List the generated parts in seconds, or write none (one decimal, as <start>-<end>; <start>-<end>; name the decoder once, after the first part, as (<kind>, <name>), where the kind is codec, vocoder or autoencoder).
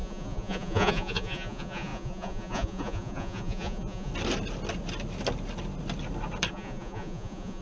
0.0-4.1 (vocoder, Vocos); 6.5-7.6